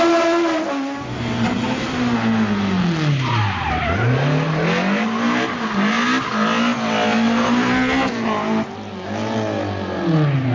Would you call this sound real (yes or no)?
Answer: yes